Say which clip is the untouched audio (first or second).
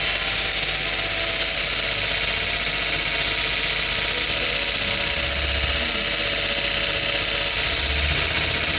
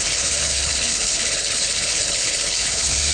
first